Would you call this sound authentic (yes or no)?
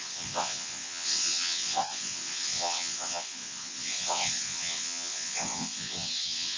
no